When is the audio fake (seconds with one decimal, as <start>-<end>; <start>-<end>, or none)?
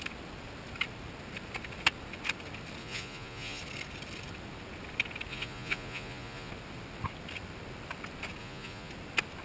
2.8-3.6; 5.3-6.5; 8.4-8.9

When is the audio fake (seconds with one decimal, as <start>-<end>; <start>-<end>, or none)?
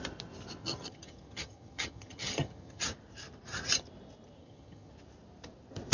0.6-2.8; 4.4-4.9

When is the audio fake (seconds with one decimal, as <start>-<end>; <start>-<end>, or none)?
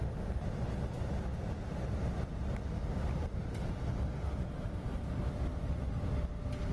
none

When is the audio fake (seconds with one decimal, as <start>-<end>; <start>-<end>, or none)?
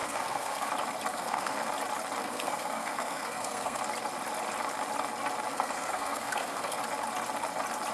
0.0-0.7; 1.1-1.7; 2.2-3.8; 5.5-6.8